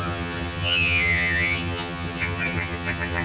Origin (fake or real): fake